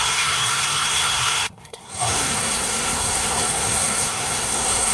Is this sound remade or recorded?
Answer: remade